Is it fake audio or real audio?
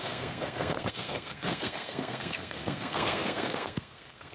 fake